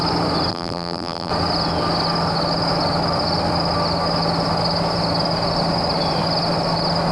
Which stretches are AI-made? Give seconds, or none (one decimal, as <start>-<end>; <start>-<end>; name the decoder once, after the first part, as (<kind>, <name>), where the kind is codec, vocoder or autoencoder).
0.5-1.3 (vocoder, BigVGAN v2)